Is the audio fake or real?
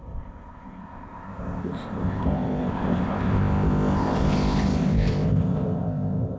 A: fake